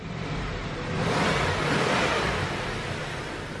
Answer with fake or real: real